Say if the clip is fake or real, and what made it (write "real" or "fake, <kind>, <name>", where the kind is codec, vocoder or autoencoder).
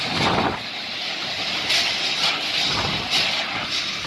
real